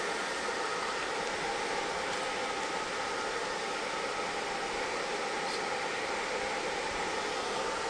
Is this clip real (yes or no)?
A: yes